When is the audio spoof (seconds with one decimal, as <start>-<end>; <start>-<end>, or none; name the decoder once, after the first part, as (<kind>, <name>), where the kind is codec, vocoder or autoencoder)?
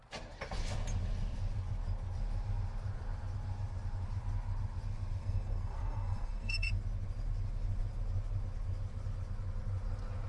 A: 5.2-6.7 (codec, SNAC)